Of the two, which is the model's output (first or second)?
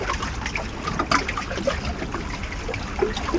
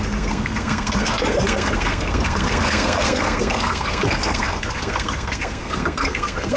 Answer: second